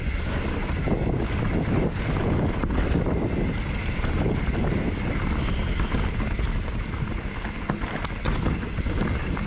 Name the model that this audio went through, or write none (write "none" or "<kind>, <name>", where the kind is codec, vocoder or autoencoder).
none